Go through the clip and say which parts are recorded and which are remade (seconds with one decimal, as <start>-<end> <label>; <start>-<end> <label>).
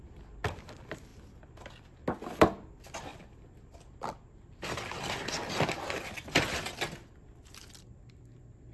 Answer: 0.0-8.7 recorded